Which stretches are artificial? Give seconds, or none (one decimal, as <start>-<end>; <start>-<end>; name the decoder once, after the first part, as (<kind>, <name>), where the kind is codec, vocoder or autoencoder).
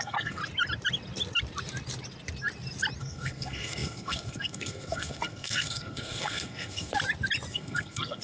0.0-0.4 (codec, SNAC); 3.0-6.9; 7.5-8.2